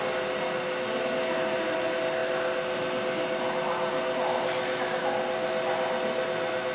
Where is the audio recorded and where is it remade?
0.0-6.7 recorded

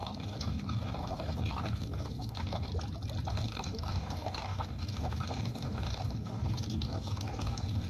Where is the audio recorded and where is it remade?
0.0-2.7 remade; 2.7-3.3 recorded; 3.3-7.9 remade